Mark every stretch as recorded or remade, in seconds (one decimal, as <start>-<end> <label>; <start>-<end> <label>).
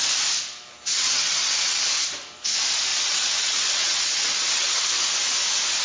0.0-0.9 recorded; 0.9-1.8 remade; 1.8-2.9 recorded; 2.9-4.9 remade; 4.9-5.8 recorded